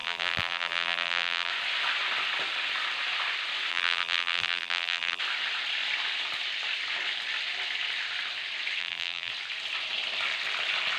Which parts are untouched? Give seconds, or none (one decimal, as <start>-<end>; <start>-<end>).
1.5-3.7; 5.2-8.8; 9.3-11.0